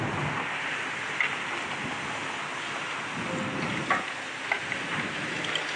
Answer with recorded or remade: recorded